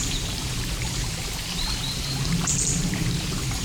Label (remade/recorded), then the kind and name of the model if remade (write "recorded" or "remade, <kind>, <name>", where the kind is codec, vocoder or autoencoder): remade, vocoder, BigVGAN v2